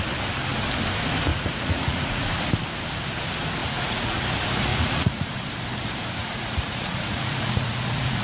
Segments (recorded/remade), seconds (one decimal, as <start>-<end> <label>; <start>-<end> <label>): 0.0-1.3 recorded; 1.3-2.2 remade; 2.2-3.6 recorded; 3.6-4.2 remade; 4.2-4.7 recorded; 4.7-5.3 remade; 5.3-6.2 recorded; 6.2-8.2 remade